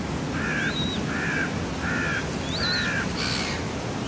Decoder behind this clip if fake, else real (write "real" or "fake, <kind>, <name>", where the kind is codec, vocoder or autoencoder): real